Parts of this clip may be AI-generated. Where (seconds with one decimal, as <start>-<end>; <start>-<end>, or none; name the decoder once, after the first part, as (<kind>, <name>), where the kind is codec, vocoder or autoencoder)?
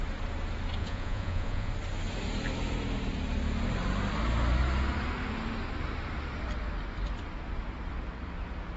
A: 0.8-1.7 (vocoder, Vocos)